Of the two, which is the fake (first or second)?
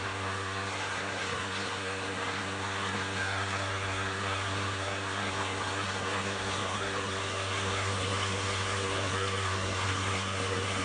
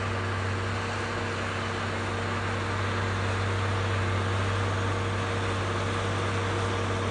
first